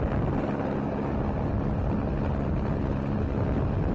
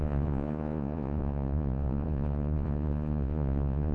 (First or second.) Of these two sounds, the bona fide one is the first